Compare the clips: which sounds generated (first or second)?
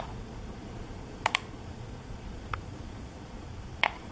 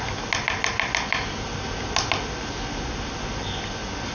first